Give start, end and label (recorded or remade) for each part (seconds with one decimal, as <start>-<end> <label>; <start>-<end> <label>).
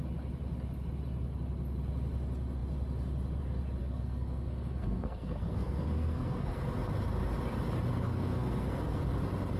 0.0-3.8 recorded; 3.8-6.6 remade; 6.6-7.9 recorded; 7.9-9.0 remade; 9.0-9.6 recorded